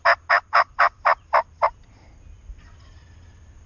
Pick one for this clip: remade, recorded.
recorded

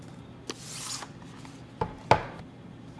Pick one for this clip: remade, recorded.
recorded